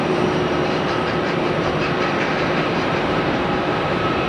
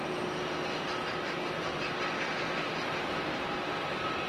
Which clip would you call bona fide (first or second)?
second